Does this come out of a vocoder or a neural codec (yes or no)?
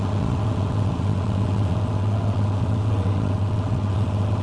yes